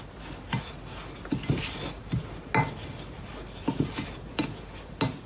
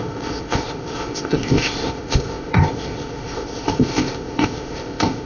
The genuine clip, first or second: first